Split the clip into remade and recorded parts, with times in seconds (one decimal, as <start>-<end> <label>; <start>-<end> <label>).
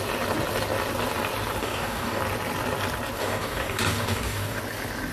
0.0-1.6 recorded; 1.6-2.2 remade; 2.2-3.2 recorded; 3.2-4.6 remade; 4.6-5.1 recorded